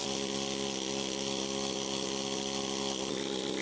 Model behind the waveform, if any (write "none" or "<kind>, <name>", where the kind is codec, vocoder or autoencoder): none